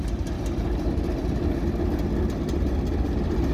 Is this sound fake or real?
real